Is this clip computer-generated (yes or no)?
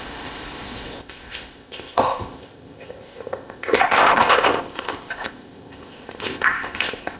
yes